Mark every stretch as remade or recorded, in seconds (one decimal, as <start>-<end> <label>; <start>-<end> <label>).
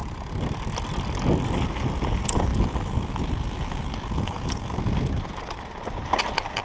0.0-6.6 recorded